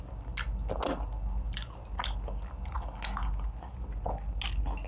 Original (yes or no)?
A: yes